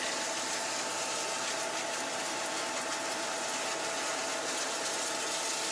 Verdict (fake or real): real